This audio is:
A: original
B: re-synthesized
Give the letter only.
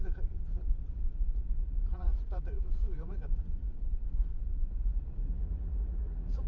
B